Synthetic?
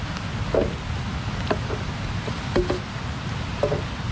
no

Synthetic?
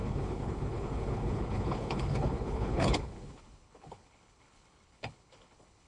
yes